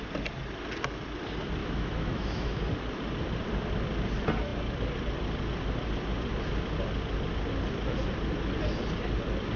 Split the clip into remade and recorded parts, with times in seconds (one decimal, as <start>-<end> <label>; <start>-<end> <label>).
0.0-1.6 recorded; 1.6-2.6 remade; 2.6-9.6 recorded